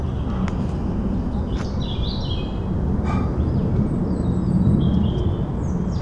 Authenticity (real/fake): real